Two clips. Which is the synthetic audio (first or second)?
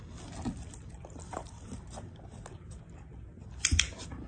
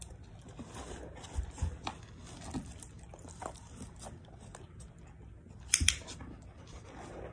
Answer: first